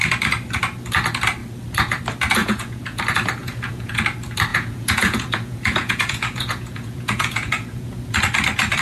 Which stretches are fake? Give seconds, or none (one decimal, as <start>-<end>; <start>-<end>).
2.4-3.0; 3.4-4.0; 4.5-8.2